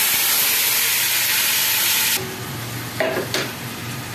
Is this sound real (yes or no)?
yes